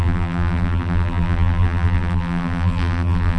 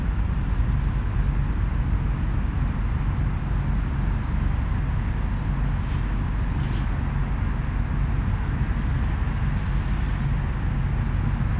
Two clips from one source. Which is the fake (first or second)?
first